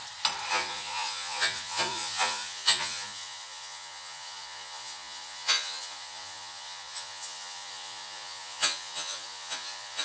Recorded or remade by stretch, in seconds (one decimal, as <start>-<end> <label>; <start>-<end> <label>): 0.0-0.5 recorded; 0.5-10.0 remade